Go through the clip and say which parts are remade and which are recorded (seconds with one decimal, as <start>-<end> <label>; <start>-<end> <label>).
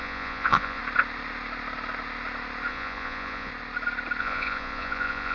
0.0-0.8 remade; 0.8-2.7 recorded; 2.7-3.5 remade; 3.5-4.2 recorded; 4.2-5.3 remade